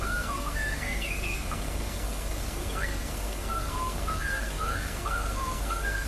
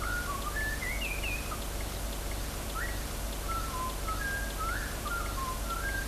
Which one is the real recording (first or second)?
second